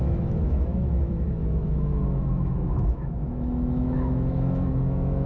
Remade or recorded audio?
remade